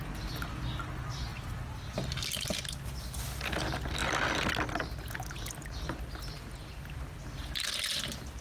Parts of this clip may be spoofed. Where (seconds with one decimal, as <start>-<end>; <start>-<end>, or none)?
none